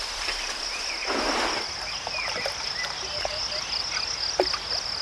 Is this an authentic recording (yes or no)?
yes